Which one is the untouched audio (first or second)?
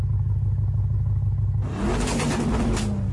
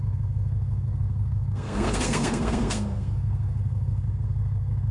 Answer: first